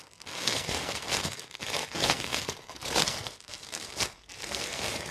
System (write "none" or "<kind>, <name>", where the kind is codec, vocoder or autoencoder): codec, SNAC